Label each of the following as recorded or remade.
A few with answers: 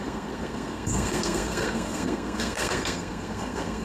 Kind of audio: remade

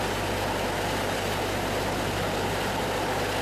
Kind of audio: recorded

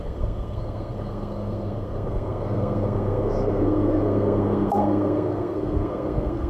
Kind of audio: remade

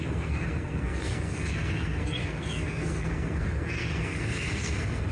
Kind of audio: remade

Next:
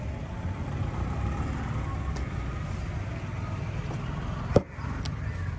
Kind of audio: recorded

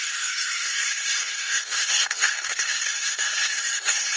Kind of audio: remade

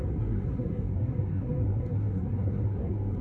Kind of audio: remade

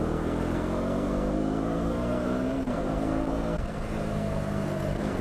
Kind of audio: remade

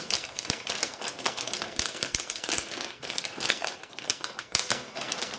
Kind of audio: remade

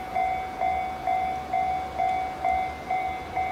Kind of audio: recorded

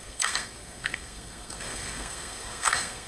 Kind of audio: remade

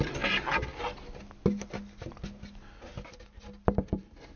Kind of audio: recorded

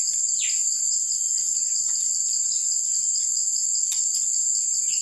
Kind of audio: recorded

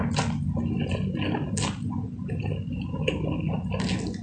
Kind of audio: recorded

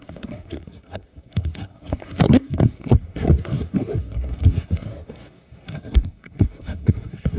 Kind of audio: remade